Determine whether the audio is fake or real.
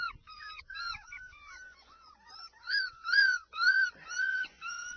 fake